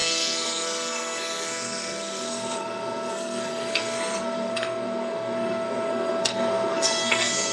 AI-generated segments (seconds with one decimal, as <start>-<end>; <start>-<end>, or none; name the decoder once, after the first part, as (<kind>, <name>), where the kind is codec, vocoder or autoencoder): 0.0-7.5 (codec, SNAC)